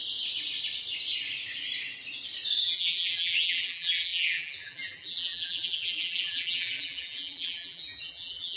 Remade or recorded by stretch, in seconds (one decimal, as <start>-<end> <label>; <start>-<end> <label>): 0.0-2.6 recorded; 2.6-8.6 remade